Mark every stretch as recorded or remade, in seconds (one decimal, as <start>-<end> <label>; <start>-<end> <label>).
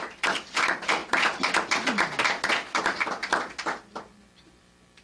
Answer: 0.0-1.0 remade; 1.0-2.5 recorded; 2.5-3.2 remade; 3.2-4.6 recorded; 4.6-5.0 remade